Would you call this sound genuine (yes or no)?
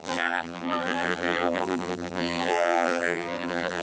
no